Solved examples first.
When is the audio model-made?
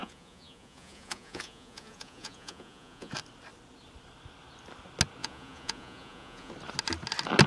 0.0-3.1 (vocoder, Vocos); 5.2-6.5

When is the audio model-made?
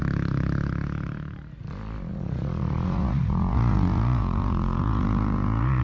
2.1-5.8 (vocoder, Vocos)